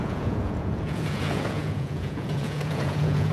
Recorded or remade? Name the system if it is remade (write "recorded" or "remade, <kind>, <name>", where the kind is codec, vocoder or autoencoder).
remade, vocoder, Vocos